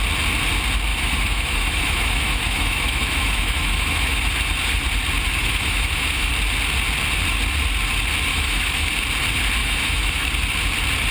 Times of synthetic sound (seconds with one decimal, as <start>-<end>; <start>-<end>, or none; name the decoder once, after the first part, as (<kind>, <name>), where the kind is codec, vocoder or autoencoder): 0.9-4.3 (autoencoder, DAC-VAE); 5.4-6.3; 8.3-8.9; 9.6-10.3